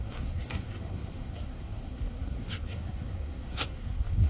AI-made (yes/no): yes